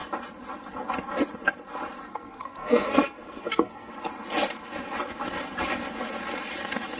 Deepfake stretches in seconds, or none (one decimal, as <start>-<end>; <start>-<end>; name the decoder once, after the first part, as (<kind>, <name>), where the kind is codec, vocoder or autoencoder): 2.1-3.9 (codec, SNAC)